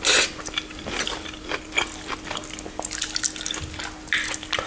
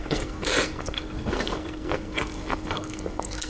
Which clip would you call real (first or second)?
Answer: first